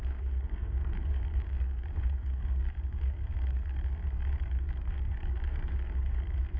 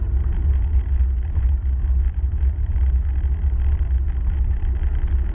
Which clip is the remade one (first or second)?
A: first